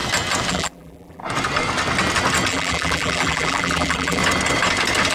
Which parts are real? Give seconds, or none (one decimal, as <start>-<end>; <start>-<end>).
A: 0.0-0.5; 1.2-2.5; 4.2-5.1